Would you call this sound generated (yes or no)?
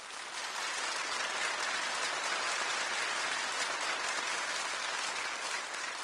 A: no